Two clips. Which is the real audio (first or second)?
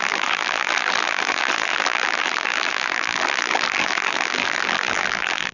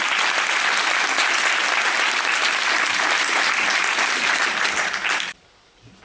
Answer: second